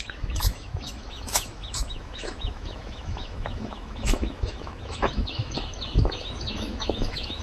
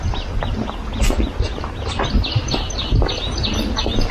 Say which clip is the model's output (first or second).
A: first